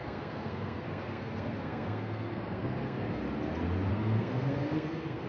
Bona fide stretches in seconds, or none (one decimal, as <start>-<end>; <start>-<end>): 3.2-3.9